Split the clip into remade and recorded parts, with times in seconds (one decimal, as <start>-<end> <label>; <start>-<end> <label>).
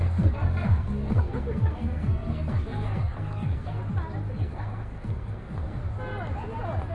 0.0-3.8 remade; 3.8-4.3 recorded; 4.3-5.8 remade; 5.8-6.9 recorded